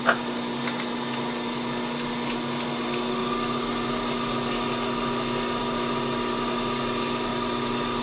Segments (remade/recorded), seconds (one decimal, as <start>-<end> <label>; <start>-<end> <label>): 0.0-8.0 recorded